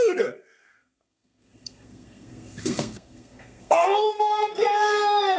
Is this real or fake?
fake